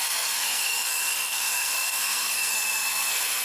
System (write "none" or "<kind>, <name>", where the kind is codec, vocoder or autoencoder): codec, SNAC